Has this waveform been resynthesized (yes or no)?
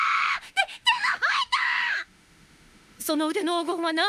yes